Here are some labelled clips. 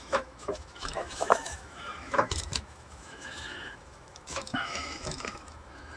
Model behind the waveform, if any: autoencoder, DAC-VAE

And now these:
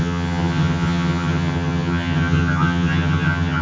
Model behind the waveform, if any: vocoder, HiFi-GAN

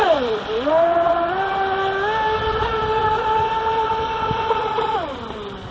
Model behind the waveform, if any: none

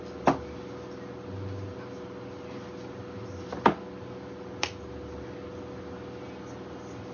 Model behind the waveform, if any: none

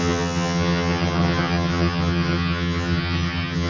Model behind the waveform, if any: vocoder, HiFi-GAN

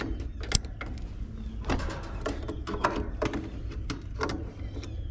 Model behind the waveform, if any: none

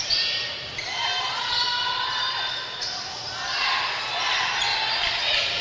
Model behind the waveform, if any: none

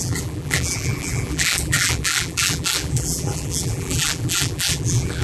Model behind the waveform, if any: vocoder, BigVGAN v2